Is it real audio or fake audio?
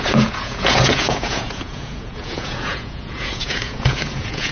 fake